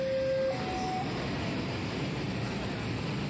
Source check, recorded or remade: recorded